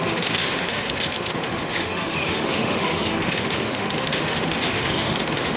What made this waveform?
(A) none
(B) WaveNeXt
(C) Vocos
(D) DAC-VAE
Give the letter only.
D